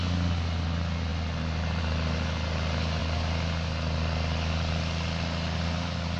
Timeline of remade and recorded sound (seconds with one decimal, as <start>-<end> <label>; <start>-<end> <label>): 0.0-6.2 recorded